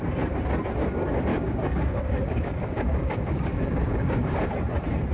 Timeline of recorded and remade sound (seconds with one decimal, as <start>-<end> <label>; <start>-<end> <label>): 0.0-1.3 recorded; 1.3-4.4 remade; 4.4-5.1 recorded